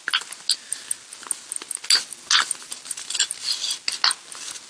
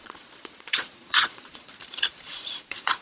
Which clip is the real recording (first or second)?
first